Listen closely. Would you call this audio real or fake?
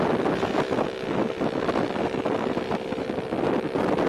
real